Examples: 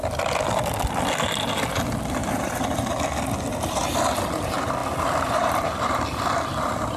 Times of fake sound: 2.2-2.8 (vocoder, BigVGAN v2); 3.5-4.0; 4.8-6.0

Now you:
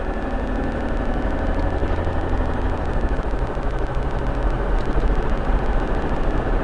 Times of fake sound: none

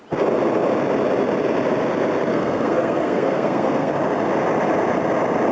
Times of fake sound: 2.3-3.9 (codec, SNAC)

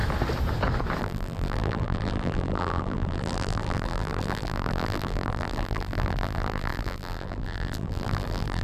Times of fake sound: 1.0-8.6 (vocoder, BigVGAN v2)

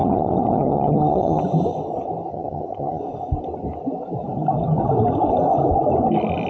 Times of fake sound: 0.0-1.4 (vocoder, HiFi-GAN); 2.3-3.0

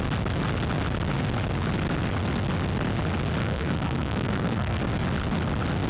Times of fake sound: 3.4-4.8 (codec, SNAC)

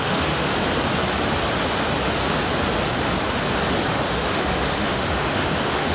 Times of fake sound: 0.0-0.5 (autoencoder, DAC-VAE); 3.9-5.9

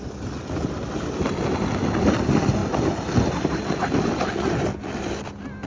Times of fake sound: none